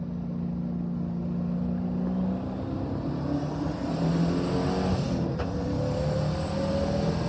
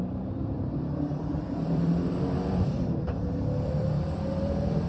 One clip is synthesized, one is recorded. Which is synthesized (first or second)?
second